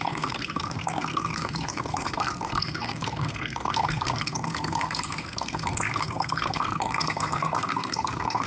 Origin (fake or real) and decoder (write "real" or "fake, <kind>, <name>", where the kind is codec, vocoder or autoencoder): fake, codec, SNAC